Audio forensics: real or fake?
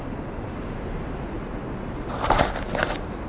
real